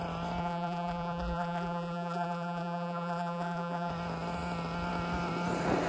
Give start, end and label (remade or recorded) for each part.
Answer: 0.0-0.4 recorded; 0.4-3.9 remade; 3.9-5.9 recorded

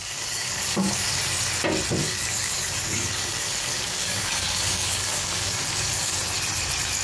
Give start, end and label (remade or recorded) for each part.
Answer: 0.0-1.2 remade; 1.2-2.0 recorded; 2.0-6.2 remade; 6.2-7.0 recorded

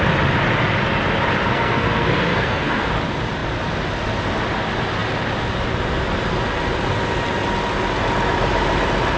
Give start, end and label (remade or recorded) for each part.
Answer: 0.0-1.5 recorded; 1.5-2.9 remade; 2.9-9.2 recorded

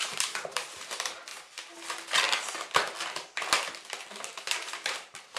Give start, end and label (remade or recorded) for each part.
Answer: 0.0-1.3 remade; 1.3-4.5 recorded; 4.5-5.4 remade

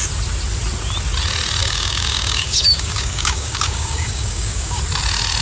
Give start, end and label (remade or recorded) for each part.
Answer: 0.0-1.6 recorded; 1.6-4.8 remade; 4.8-5.4 recorded